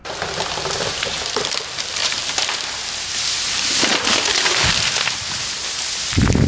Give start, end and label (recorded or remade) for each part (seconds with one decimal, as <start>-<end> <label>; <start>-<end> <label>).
0.0-1.6 remade; 1.6-2.0 recorded; 2.0-2.9 remade; 2.9-3.9 recorded; 3.9-5.6 remade; 5.6-6.5 recorded